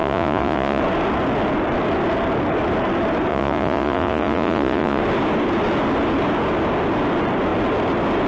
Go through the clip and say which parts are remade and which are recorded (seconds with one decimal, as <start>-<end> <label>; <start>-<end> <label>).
0.0-0.8 remade; 0.8-3.3 recorded; 3.3-5.0 remade; 5.0-8.3 recorded